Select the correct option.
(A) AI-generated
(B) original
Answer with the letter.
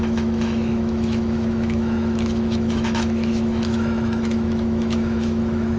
A